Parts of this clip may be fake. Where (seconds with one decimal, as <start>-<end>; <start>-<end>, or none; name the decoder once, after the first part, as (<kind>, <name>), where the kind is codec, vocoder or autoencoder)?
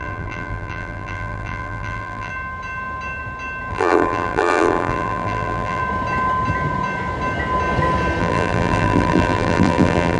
0.0-2.3 (vocoder, BigVGAN v2); 3.7-5.8; 8.2-10.2